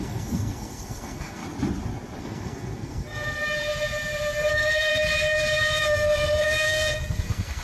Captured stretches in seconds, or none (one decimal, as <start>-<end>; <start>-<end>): 1.4-2.2; 3.4-4.5; 4.9-5.8